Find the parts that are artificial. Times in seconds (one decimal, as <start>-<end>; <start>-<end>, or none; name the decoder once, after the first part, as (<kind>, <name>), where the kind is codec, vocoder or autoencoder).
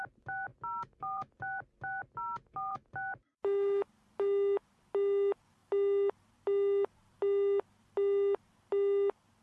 none